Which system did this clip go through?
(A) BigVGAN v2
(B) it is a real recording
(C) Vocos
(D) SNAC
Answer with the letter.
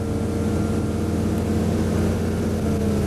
B